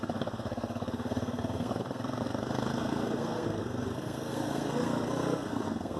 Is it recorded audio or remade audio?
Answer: remade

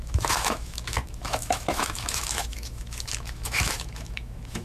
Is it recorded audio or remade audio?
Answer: remade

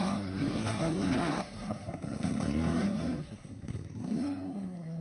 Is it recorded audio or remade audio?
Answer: remade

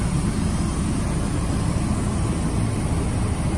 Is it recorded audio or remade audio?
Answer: recorded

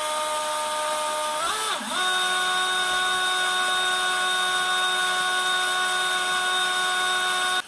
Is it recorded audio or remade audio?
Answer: recorded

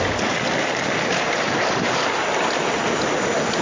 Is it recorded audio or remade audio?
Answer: recorded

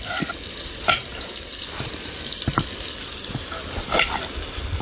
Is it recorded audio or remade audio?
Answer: recorded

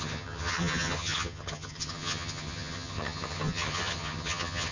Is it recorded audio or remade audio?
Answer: remade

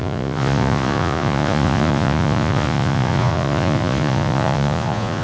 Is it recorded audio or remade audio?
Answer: remade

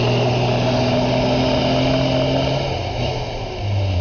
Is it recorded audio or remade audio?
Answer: recorded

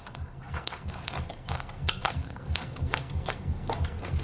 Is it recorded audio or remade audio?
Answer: remade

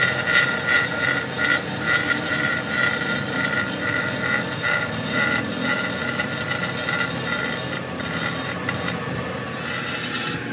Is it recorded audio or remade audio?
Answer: recorded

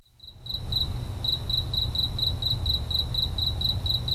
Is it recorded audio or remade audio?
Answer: recorded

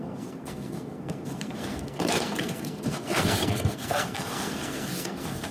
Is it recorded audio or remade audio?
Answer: remade